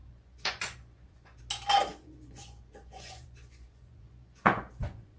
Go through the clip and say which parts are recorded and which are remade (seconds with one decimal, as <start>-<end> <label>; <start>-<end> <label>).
0.0-1.4 remade; 1.4-1.9 recorded; 1.9-5.2 remade